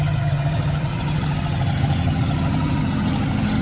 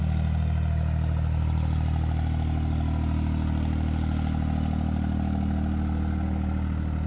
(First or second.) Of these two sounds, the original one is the second